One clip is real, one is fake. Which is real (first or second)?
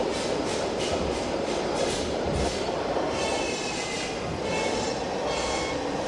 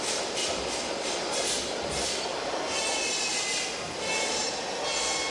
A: second